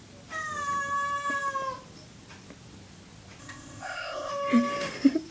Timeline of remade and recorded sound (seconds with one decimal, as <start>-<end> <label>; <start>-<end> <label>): 0.0-3.4 recorded; 3.4-4.3 remade; 4.3-5.3 recorded